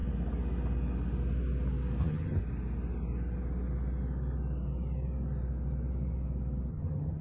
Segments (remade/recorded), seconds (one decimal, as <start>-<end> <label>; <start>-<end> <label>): 0.0-2.0 recorded; 2.0-2.4 remade; 2.4-6.7 recorded; 6.7-7.2 remade